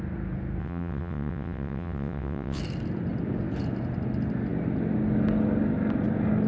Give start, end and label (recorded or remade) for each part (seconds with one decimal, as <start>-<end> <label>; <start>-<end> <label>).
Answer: 0.0-0.6 recorded; 0.6-2.6 remade; 2.6-6.5 recorded